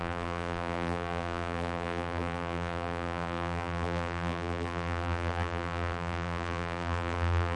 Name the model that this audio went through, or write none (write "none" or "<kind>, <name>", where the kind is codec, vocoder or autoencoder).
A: vocoder, BigVGAN v2